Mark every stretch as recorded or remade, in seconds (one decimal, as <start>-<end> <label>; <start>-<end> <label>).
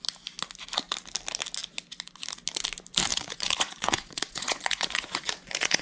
0.0-3.1 recorded; 3.1-5.8 remade